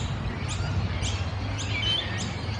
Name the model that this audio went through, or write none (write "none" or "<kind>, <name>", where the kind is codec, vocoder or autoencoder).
none